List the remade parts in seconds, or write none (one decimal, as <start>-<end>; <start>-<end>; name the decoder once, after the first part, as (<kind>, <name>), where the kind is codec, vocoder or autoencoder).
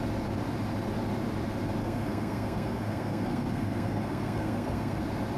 1.8-5.0 (codec, SNAC)